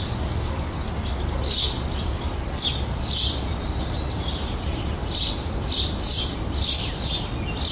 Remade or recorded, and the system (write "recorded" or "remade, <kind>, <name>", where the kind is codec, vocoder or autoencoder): recorded